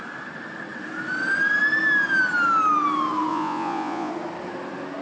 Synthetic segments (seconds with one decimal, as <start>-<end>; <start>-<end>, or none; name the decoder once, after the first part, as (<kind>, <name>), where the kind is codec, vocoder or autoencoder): 3.3-4.1 (vocoder, Vocos)